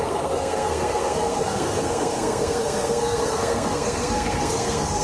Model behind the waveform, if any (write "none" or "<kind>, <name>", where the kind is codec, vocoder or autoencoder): codec, SNAC